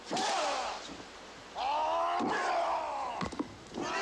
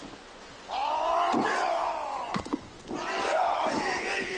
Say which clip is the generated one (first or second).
second